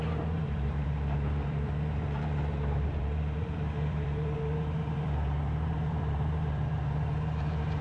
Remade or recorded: remade